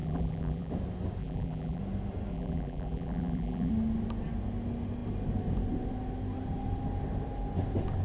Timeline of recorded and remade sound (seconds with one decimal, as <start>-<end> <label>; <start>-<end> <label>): 0.0-0.7 remade; 0.7-1.2 recorded; 1.2-1.8 remade; 1.8-2.3 recorded; 2.3-3.7 remade; 3.7-8.0 recorded